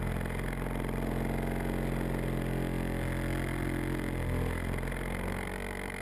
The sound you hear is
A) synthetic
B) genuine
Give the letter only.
B